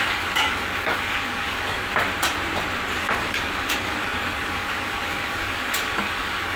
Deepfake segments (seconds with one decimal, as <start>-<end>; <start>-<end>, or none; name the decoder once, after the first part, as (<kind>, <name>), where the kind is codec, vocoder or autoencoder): 0.0-1.9 (codec, DAC); 3.0-6.6